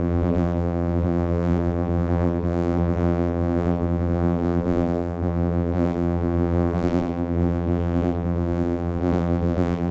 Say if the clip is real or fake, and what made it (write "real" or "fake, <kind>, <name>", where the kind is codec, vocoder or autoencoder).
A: fake, vocoder, BigVGAN v2